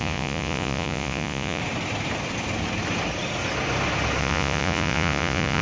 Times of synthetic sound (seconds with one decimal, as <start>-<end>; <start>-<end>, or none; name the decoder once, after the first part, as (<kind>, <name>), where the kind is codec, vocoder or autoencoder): 0.0-1.6 (vocoder, Vocos); 4.2-5.6